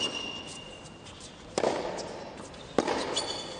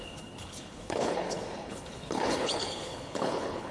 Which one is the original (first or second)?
first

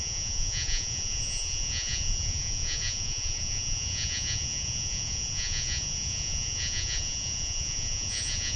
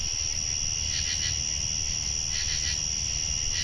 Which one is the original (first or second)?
second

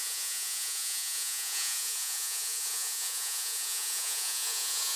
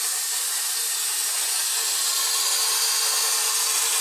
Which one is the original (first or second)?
second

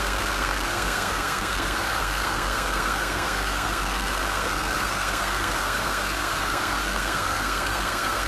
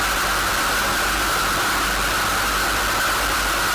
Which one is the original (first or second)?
second